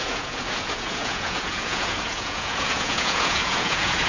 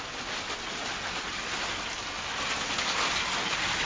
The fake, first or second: first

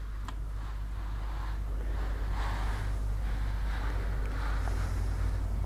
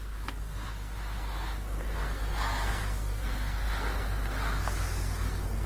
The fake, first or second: second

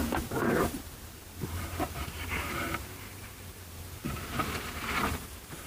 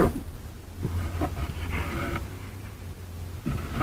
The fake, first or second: first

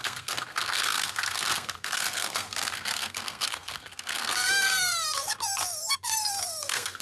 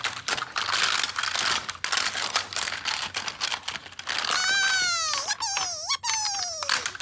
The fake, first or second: first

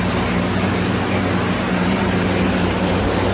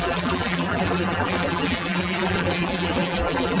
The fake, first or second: second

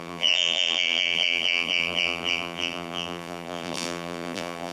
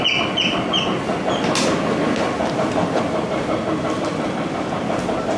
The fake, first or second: first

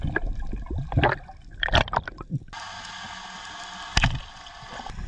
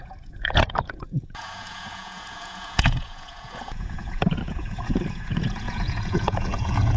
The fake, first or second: second